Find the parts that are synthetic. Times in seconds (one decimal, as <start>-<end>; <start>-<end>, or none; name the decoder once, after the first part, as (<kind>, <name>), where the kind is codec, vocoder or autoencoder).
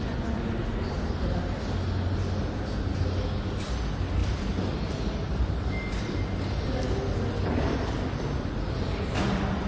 none